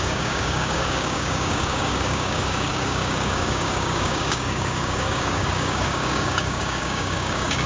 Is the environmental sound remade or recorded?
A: remade